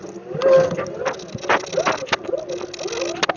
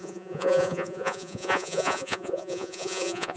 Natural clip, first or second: first